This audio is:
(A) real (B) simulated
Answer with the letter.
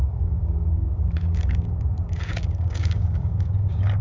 B